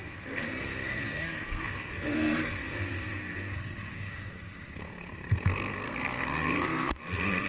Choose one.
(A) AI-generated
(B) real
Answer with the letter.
A